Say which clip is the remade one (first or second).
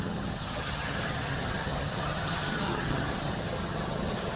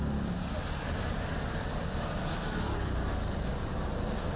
first